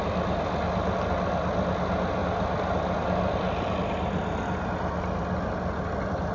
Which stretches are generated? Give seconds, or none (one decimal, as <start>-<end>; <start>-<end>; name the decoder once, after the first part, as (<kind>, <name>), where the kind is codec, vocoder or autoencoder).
none